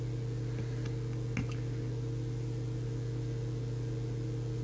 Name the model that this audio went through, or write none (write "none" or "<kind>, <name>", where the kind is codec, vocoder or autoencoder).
none